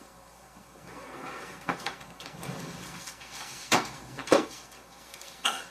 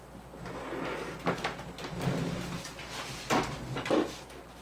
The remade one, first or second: first